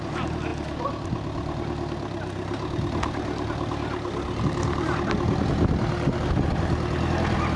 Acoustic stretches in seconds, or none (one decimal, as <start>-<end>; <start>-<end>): 0.0-7.6

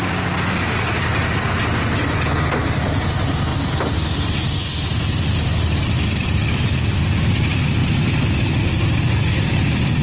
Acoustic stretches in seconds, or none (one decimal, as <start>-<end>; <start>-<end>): 0.0-3.5; 7.3-7.8; 8.7-10.0

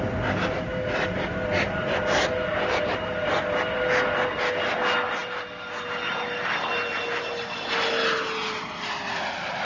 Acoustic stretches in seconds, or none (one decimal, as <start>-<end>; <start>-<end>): 0.0-9.6

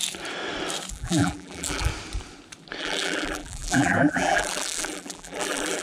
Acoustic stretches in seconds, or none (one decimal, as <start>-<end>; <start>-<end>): 0.0-0.9; 1.9-2.8